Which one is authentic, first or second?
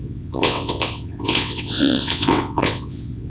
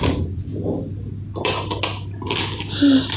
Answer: second